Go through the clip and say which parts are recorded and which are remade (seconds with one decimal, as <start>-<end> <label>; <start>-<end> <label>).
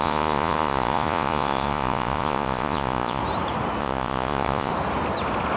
0.0-3.2 remade; 3.2-3.8 recorded; 3.8-4.7 remade; 4.7-5.6 recorded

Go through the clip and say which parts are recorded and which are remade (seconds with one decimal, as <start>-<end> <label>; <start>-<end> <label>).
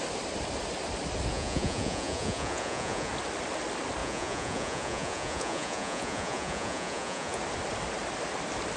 0.0-1.3 recorded; 1.3-3.1 remade; 3.1-4.0 recorded; 4.0-7.4 remade; 7.4-8.8 recorded